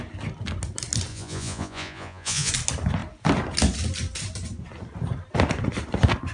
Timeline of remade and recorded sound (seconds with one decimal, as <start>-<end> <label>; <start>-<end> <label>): 0.0-1.1 recorded; 1.1-2.5 remade; 2.5-6.3 recorded